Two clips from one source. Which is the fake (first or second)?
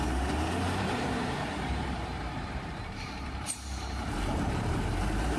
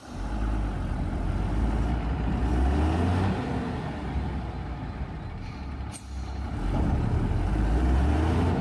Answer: first